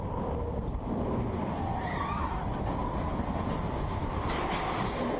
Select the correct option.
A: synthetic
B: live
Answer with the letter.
B